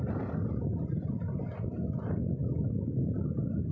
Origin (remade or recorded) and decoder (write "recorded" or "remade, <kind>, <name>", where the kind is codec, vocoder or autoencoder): recorded